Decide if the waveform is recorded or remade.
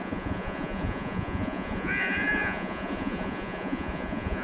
remade